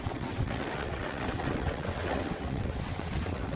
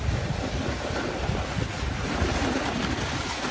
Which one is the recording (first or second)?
second